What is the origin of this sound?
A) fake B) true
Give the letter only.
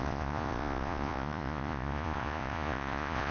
A